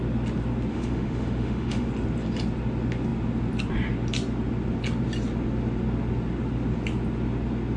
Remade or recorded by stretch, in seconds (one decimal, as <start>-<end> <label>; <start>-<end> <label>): 0.0-0.7 recorded; 0.7-1.9 remade; 1.9-7.8 recorded